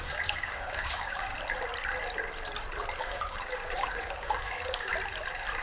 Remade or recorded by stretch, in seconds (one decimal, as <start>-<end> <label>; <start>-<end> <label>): 0.0-1.3 remade; 1.3-3.0 recorded; 3.0-4.9 remade; 4.9-5.6 recorded